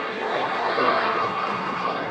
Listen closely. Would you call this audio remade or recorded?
remade